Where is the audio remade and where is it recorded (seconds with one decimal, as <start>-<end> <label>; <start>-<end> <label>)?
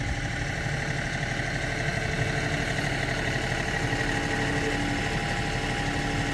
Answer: 0.0-6.3 recorded